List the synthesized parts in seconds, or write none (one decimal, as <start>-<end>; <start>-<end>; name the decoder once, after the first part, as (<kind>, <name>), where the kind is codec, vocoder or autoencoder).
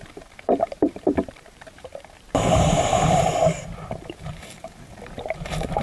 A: 0.0-3.3 (vocoder, BigVGAN v2); 3.8-5.8